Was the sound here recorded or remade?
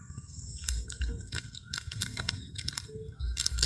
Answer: remade